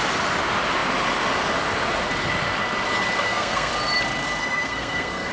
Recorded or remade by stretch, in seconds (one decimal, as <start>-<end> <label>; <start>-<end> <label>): 0.0-3.2 recorded; 3.2-3.7 remade; 3.7-4.4 recorded; 4.4-5.3 remade